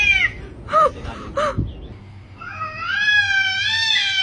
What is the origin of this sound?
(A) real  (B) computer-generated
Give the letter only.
A